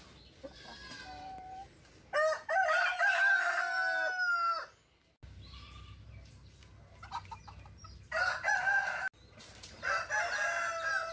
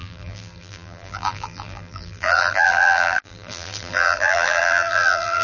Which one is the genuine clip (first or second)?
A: first